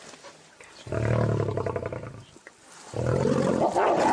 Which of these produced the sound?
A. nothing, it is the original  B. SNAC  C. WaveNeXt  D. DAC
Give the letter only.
A